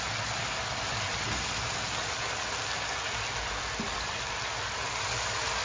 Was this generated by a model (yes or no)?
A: no